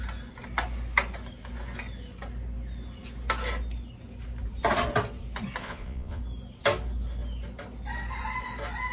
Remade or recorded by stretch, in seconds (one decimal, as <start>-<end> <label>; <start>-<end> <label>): 0.0-5.6 recorded; 5.6-6.2 remade; 6.2-8.9 recorded